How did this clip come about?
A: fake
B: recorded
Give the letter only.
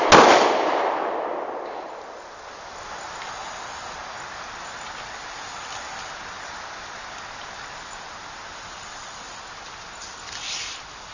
B